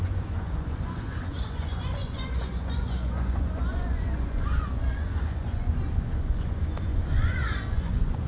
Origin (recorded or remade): remade